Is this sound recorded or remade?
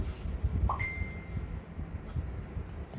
recorded